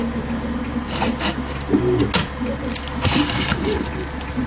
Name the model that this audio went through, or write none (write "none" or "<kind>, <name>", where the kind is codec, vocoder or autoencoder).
none